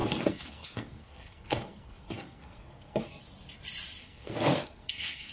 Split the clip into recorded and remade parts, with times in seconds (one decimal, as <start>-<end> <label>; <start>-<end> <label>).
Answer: 0.0-3.2 remade; 3.2-4.0 recorded; 4.0-5.3 remade